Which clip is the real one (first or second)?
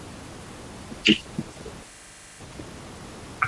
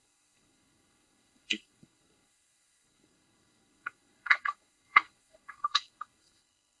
first